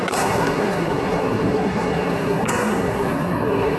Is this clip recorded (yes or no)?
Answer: no